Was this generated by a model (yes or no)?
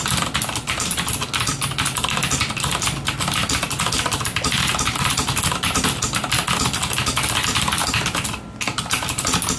no